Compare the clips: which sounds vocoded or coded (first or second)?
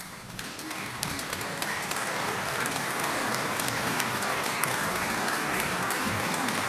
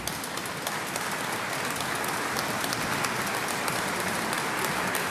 first